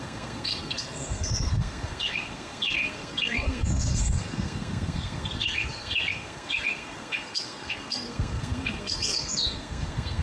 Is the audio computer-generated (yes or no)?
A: yes